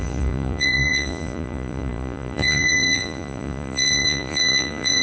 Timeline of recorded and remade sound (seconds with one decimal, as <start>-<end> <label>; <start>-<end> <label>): 0.0-5.0 remade